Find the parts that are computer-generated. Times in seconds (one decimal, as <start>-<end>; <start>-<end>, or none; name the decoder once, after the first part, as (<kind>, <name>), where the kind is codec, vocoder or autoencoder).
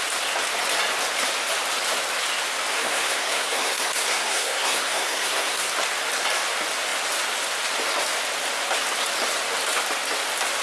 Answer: 2.7-5.7 (codec, SNAC)